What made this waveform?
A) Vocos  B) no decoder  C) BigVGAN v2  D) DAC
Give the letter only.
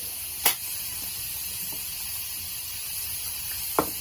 B